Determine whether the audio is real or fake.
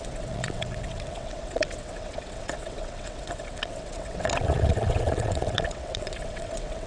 fake